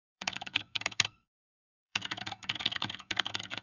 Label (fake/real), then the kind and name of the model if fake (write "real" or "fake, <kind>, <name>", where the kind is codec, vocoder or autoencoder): fake, codec, SNAC